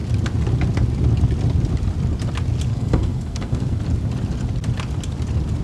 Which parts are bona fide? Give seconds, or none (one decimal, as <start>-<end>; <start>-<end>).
0.0-2.7; 3.8-5.6